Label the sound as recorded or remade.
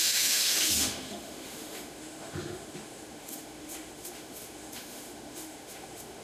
remade